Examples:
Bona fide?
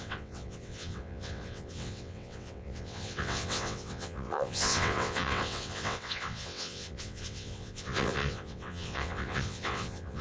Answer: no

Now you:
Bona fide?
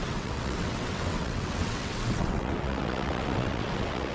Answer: no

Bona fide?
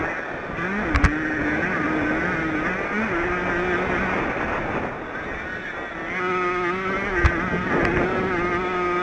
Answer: yes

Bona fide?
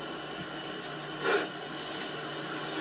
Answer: yes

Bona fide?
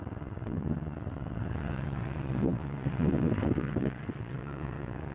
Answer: no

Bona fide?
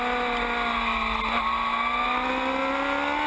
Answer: yes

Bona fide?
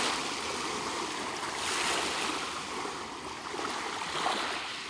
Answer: yes